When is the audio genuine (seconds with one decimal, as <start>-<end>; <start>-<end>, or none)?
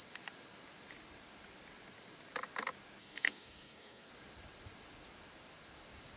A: 0.0-3.0; 4.1-6.2